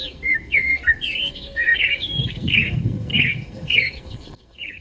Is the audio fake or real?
fake